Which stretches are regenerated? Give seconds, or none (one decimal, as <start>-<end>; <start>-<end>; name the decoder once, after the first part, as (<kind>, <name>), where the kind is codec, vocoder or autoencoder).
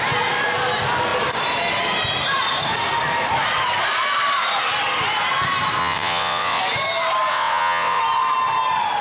5.8-6.6 (vocoder, WaveNeXt); 7.3-8.0